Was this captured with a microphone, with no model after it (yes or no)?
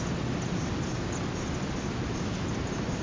yes